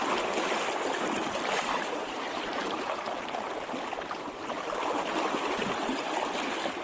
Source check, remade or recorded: recorded